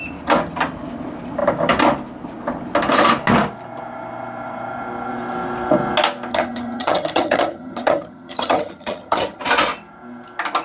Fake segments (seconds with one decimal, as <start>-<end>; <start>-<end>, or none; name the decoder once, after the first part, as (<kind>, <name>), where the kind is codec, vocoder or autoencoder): 6.3-9.4 (vocoder, HiFi-GAN)